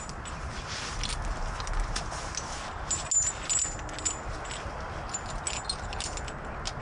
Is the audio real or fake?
real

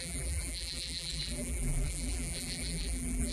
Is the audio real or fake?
fake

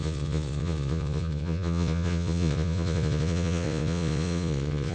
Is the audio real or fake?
fake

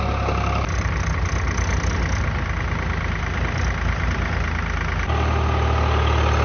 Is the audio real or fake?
real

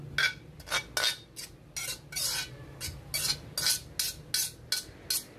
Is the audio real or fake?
real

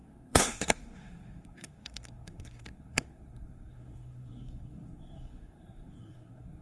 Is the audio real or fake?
fake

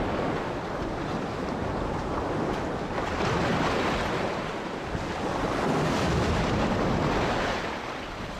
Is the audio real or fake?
real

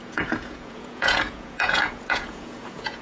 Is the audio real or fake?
fake